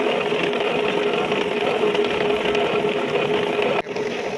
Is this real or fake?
real